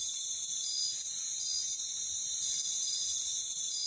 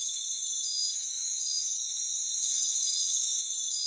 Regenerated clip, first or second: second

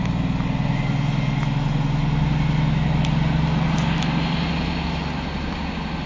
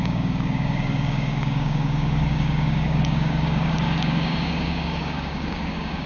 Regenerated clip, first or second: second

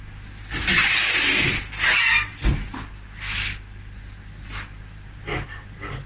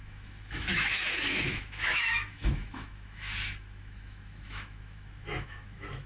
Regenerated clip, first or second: second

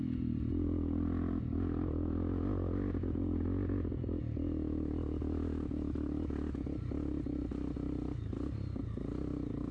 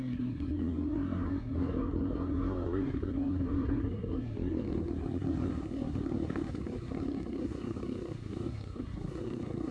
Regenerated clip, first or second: second